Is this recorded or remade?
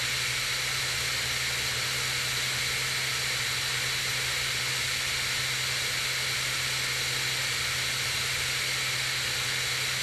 recorded